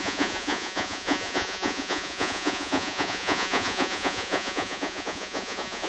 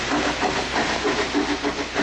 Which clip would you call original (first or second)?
second